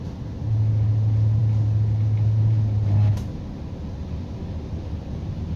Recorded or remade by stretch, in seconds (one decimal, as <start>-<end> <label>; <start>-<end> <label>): 0.0-5.6 recorded